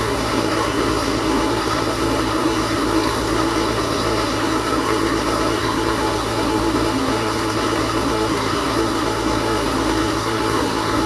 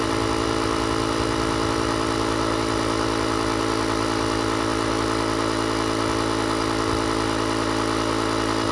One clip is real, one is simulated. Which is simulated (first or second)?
first